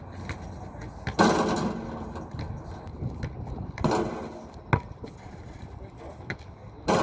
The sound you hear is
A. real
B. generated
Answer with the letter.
A